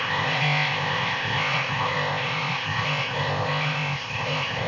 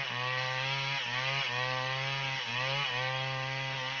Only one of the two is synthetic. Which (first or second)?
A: first